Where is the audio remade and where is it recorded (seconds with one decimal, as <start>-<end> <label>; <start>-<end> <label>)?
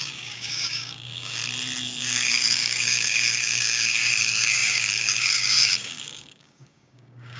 0.0-1.4 remade; 1.4-2.0 recorded; 2.0-7.4 remade